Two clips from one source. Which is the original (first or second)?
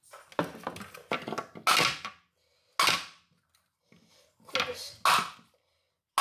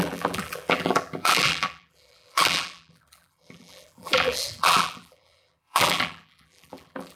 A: first